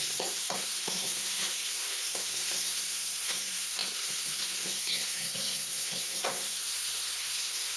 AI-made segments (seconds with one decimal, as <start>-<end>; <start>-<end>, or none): 0.0-7.8